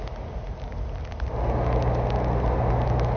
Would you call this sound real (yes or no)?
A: yes